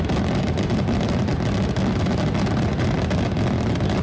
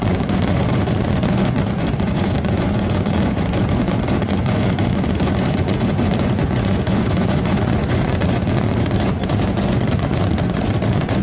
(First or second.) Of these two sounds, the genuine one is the first